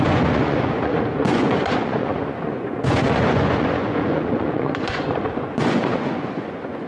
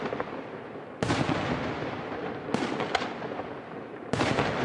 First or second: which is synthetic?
first